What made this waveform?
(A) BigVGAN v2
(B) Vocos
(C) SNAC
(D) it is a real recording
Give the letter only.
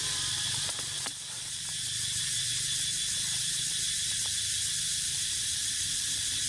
A